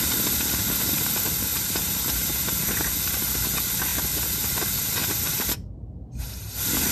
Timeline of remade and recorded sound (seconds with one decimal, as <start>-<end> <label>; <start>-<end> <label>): 0.0-1.5 recorded; 1.5-3.2 remade; 3.2-5.0 recorded; 5.0-6.9 remade